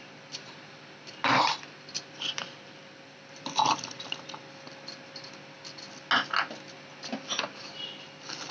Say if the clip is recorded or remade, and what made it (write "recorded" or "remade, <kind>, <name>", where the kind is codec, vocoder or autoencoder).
recorded